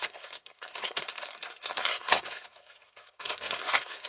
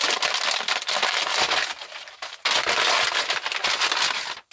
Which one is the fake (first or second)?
first